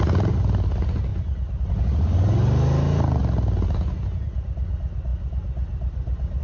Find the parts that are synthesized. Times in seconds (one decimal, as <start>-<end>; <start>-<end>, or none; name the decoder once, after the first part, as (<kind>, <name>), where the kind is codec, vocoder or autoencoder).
none